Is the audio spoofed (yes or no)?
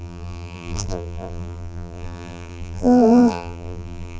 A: yes